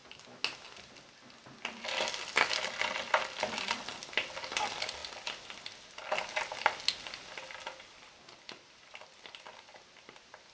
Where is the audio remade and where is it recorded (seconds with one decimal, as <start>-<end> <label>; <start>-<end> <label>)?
0.0-10.5 recorded